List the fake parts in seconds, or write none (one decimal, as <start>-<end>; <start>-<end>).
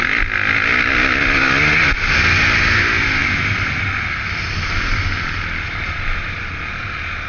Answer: none